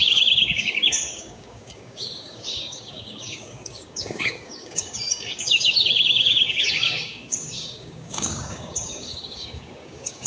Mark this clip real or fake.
fake